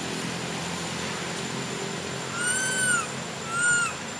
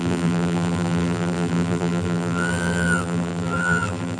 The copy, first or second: second